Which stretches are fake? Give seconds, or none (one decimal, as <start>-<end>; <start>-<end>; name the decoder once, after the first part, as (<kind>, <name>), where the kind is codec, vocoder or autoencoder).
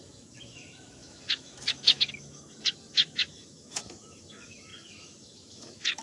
0.0-6.0 (autoencoder, DAC-VAE)